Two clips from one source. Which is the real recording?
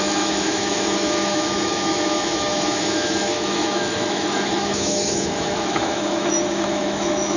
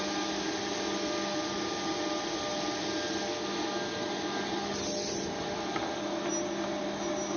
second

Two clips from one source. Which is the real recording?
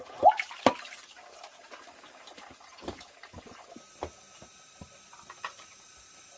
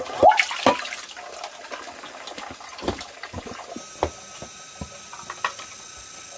second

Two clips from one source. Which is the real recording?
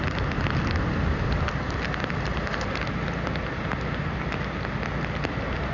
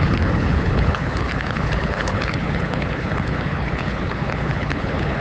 first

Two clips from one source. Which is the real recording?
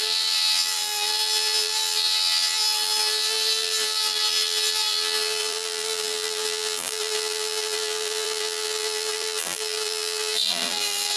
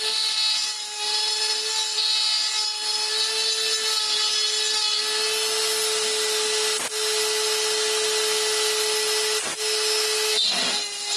second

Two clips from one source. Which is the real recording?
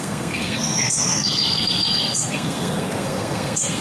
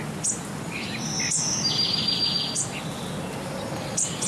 second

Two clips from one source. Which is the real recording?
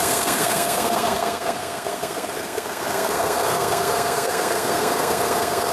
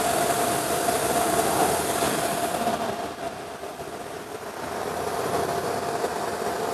second